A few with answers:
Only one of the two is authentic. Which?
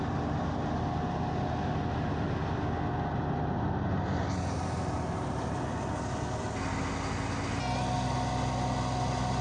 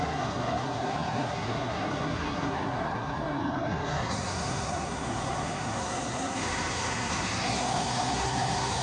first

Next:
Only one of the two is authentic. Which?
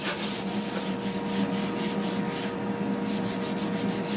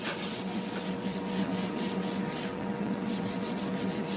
first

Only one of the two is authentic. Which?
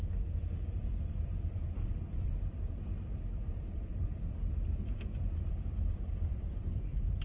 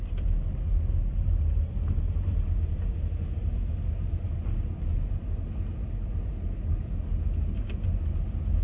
second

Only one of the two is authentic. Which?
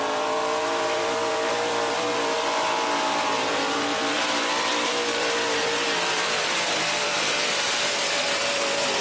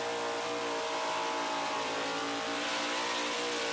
second